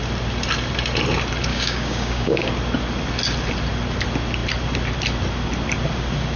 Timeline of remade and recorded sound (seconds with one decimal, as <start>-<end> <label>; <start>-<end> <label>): 0.0-1.5 recorded; 1.5-2.5 remade; 2.5-6.4 recorded